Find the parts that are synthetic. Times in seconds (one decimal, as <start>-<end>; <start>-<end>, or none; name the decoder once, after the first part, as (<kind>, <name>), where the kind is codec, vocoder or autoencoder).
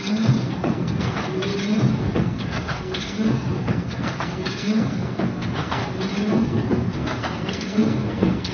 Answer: 0.0-1.5 (codec, SNAC); 2.0-5.8; 6.3-8.5